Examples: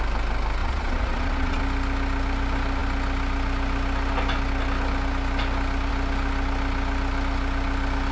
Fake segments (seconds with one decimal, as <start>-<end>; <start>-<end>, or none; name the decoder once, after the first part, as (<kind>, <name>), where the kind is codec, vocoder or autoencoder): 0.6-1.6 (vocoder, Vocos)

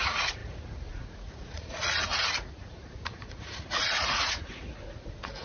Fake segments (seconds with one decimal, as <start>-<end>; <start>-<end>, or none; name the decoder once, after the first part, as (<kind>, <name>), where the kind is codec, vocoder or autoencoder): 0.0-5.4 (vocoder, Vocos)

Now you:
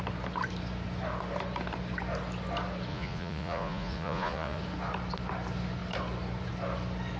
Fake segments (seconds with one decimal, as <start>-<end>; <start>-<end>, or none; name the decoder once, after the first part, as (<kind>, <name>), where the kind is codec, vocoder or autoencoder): 2.9-4.6 (vocoder, Vocos)

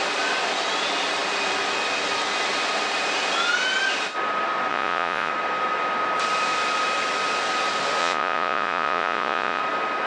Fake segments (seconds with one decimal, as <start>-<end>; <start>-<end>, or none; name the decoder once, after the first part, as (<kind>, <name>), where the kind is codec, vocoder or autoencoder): 4.7-5.3 (vocoder, Vocos); 8.0-9.6

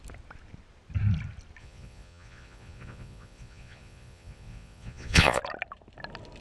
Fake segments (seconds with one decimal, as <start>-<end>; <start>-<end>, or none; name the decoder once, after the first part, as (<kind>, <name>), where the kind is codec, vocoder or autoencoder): 1.6-5.4 (vocoder, Vocos)